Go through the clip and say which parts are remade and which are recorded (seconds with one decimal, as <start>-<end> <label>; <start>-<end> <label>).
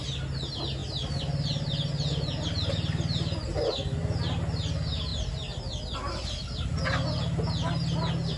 0.0-8.4 recorded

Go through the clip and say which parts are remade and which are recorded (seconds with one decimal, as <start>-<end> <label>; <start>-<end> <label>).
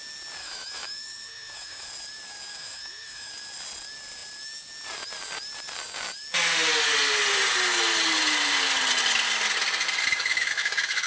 0.0-0.4 recorded; 0.4-1.9 remade; 1.9-2.5 recorded; 2.5-3.3 remade; 3.3-10.2 recorded; 10.2-11.1 remade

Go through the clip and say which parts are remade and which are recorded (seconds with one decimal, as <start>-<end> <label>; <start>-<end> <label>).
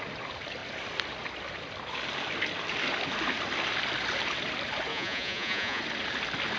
0.0-4.9 recorded; 4.9-5.8 remade; 5.8-6.6 recorded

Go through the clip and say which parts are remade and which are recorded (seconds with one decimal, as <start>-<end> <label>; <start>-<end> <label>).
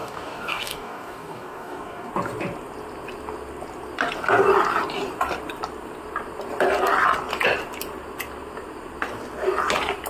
0.0-2.1 remade; 2.1-10.1 recorded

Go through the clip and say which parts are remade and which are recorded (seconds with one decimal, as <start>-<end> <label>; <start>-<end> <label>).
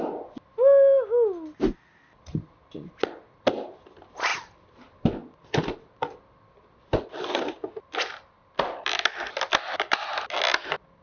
0.0-11.0 recorded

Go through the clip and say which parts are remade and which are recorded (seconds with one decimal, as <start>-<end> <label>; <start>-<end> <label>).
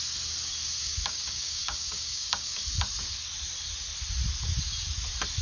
0.0-0.8 recorded; 0.8-2.6 remade; 2.6-5.4 recorded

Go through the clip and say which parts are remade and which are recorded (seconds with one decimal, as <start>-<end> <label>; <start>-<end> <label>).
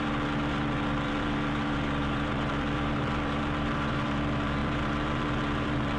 0.0-6.0 remade